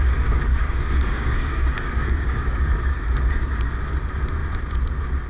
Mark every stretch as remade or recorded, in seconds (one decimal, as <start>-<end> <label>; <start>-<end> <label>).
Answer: 0.0-0.5 recorded; 0.5-3.7 remade; 3.7-5.3 recorded